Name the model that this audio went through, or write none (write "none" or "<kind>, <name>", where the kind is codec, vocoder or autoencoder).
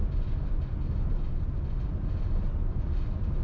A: none